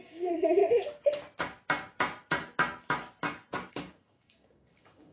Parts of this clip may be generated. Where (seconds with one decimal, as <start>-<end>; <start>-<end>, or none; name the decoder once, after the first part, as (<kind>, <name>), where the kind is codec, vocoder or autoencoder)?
0.0-0.6 (codec, DAC); 3.7-5.1